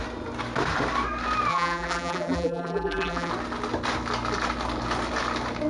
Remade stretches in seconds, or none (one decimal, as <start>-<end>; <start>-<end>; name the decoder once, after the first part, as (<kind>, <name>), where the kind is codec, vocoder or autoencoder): 1.5-3.3 (vocoder, BigVGAN v2)